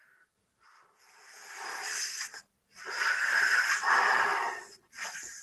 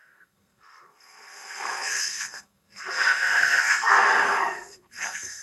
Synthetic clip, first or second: second